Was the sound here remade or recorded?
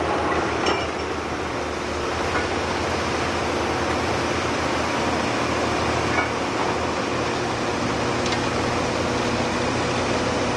recorded